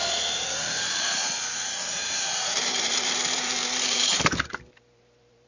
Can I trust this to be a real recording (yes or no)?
no